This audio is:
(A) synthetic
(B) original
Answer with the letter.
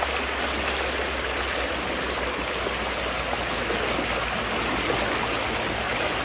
B